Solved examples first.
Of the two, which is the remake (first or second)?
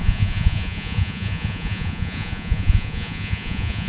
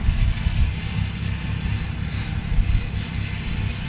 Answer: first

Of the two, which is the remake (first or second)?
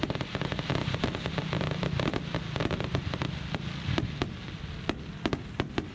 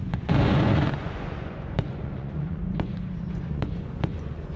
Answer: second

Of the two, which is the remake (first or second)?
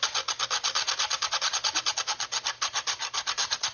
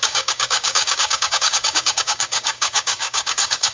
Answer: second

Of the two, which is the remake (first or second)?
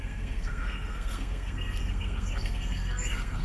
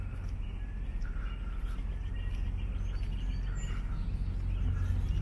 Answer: first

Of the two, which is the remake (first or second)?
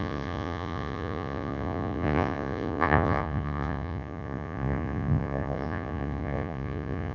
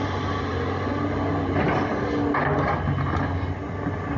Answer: first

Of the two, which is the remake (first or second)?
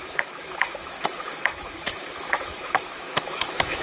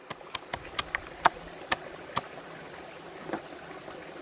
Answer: first